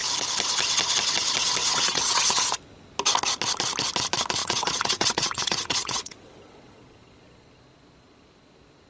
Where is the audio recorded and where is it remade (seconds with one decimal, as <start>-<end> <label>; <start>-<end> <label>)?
0.0-1.6 recorded; 1.6-2.4 remade; 2.4-4.4 recorded; 4.4-7.0 remade; 7.0-8.9 recorded